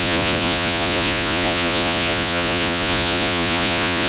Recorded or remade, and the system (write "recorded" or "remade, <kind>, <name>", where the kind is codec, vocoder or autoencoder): remade, vocoder, Vocos